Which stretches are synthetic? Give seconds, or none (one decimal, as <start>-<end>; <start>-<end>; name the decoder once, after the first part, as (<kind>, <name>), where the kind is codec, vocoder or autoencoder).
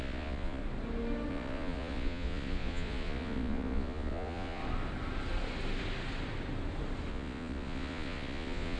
0.0-0.6 (vocoder, Vocos); 1.3-4.6; 7.1-8.8